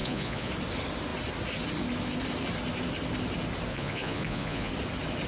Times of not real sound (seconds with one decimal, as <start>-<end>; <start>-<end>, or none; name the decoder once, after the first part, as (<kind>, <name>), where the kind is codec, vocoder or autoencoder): 0.0-0.5 (vocoder, Vocos); 3.7-4.7